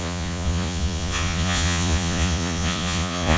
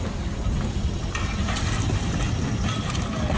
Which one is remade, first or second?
first